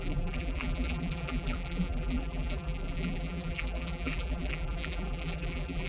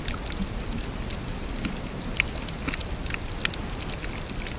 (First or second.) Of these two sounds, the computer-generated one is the first